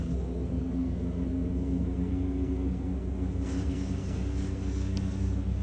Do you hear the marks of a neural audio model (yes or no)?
yes